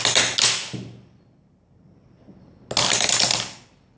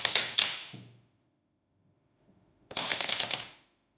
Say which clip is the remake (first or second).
second